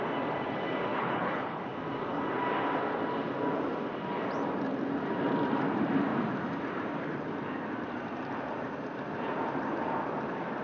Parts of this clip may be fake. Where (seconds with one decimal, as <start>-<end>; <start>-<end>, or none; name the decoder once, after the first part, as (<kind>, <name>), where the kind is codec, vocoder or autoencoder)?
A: 0.9-1.6 (codec, HILCodec)